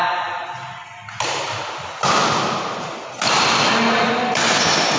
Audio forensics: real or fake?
real